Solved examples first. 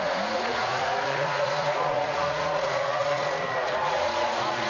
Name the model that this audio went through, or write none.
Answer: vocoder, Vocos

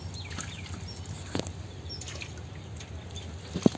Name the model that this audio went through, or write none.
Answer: none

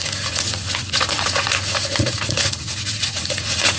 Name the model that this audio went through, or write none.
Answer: vocoder, Vocos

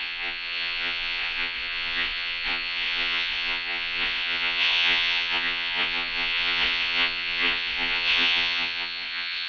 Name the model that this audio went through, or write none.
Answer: vocoder, Vocos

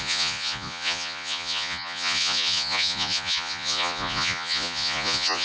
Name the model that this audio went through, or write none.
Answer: vocoder, Vocos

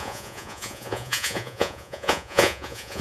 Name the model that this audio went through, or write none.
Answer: vocoder, Vocos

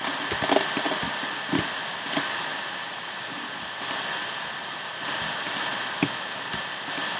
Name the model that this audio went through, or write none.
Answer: none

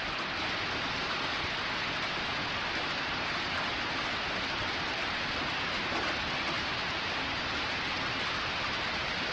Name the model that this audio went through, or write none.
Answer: none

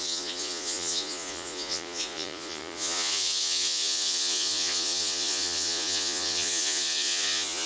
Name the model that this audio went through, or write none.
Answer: vocoder, Vocos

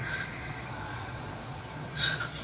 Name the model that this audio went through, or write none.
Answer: vocoder, Vocos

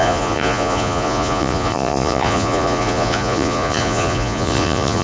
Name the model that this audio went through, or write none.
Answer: vocoder, Vocos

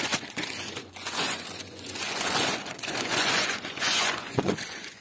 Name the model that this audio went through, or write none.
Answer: vocoder, Vocos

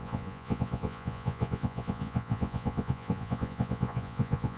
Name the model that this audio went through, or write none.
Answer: vocoder, Vocos